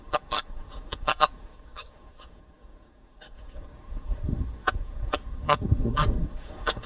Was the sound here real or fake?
fake